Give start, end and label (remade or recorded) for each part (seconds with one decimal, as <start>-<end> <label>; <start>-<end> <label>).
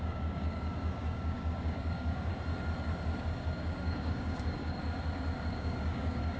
0.0-2.3 remade; 2.3-3.2 recorded; 3.2-4.8 remade; 4.8-5.5 recorded; 5.5-6.4 remade